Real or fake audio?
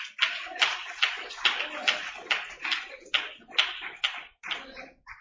real